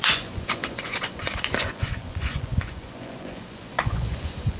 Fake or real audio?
fake